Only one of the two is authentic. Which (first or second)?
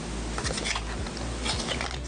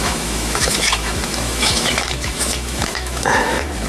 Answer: first